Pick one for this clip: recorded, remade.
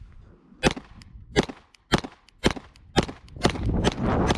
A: recorded